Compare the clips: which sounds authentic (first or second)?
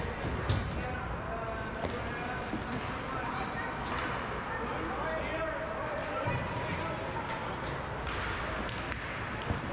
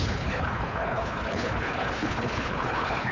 first